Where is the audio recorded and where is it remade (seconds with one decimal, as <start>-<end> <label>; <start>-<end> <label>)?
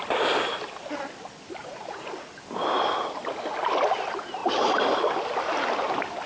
0.0-1.6 recorded; 1.6-2.3 remade; 2.3-6.3 recorded